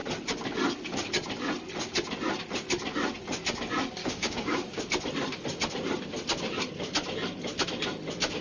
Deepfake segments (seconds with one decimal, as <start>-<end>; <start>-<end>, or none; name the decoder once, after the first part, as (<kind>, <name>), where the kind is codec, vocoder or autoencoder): 4.0-4.8 (codec, DAC)